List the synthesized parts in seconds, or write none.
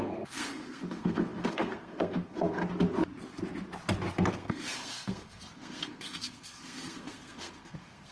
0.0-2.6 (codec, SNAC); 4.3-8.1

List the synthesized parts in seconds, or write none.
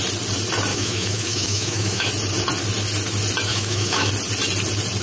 0.7-2.1 (autoencoder, DAC-VAE); 3.5-4.1